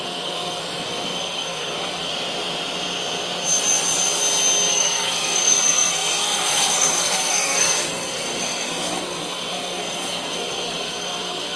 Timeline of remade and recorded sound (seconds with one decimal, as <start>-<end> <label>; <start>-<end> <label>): 0.0-2.1 remade; 2.1-4.7 recorded; 4.7-11.6 remade